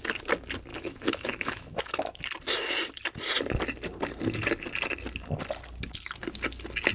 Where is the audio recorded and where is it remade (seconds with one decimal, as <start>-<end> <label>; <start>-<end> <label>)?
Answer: 0.0-0.7 recorded; 0.7-2.2 remade; 2.2-6.9 recorded